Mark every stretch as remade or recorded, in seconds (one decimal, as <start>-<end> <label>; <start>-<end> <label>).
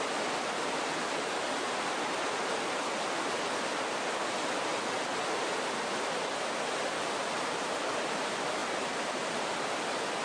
0.0-10.2 recorded